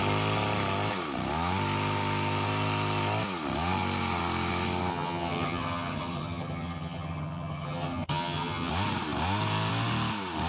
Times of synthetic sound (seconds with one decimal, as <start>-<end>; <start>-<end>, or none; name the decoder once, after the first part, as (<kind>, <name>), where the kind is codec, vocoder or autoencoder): 4.9-8.7 (vocoder, HiFi-GAN)